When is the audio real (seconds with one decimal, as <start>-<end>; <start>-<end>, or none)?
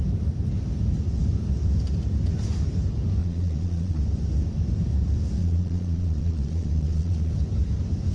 0.0-3.2; 4.0-5.4; 7.3-8.1